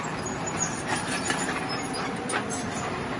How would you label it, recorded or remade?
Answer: remade